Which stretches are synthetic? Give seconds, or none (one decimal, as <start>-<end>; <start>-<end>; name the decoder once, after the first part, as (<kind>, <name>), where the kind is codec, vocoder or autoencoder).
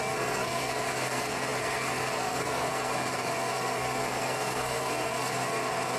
0.0-6.0 (codec, SNAC)